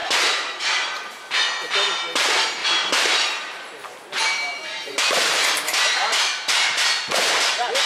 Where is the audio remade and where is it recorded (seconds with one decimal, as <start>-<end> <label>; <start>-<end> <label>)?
0.0-1.4 remade; 1.4-2.6 recorded; 2.6-7.3 remade; 7.3-7.9 recorded